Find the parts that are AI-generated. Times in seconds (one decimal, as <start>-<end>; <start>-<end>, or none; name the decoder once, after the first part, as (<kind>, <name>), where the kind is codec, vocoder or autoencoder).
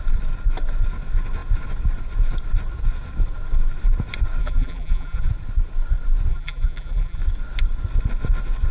4.4-5.3 (vocoder, BigVGAN v2); 6.3-7.2